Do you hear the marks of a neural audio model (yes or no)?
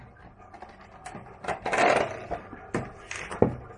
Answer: no